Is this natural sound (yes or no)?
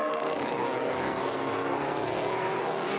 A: no